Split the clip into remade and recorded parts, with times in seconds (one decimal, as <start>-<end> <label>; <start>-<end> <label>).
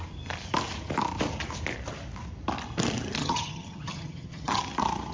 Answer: 0.0-3.2 recorded; 3.2-4.6 remade; 4.6-5.1 recorded